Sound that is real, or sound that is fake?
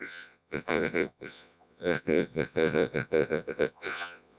fake